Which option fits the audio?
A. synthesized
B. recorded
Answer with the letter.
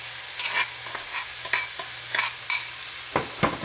B